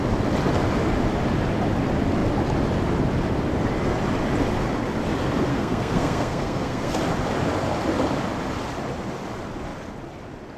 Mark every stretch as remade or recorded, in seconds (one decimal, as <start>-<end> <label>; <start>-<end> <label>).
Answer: 0.0-5.5 recorded; 5.5-6.9 remade; 6.9-10.6 recorded